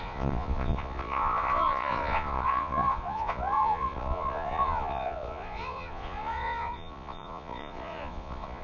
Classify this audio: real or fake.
fake